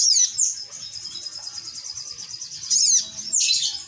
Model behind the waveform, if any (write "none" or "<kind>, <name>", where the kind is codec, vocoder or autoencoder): none